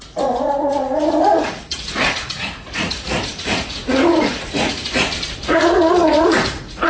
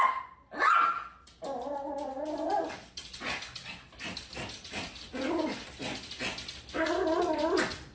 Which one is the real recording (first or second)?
second